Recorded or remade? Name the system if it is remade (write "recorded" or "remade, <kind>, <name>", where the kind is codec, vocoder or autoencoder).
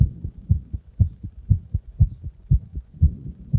remade, vocoder, Vocos